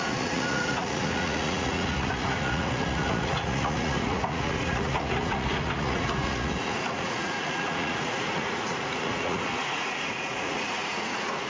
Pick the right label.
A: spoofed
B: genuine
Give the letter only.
A